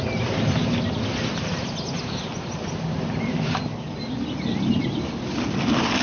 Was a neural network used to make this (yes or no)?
no